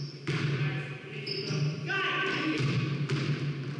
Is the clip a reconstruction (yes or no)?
no